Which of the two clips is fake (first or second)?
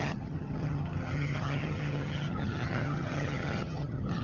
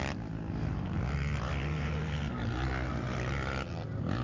first